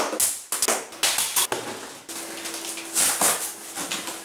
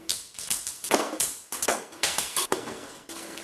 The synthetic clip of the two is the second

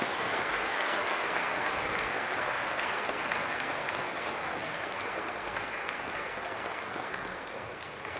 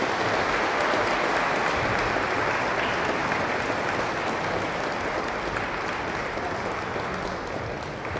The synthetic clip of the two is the first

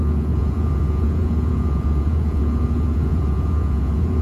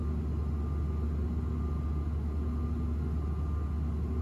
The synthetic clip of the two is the first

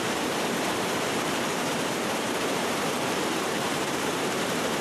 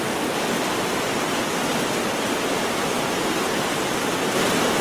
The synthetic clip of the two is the first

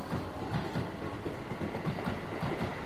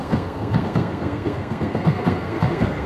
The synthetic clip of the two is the second